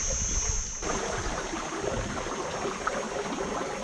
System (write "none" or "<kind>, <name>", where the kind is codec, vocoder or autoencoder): none